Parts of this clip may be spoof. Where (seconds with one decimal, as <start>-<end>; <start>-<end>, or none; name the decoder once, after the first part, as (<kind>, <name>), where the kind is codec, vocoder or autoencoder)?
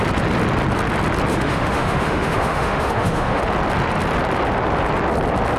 1.3-3.4 (autoencoder, DAC-VAE)